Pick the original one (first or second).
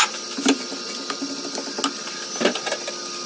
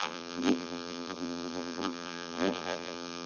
first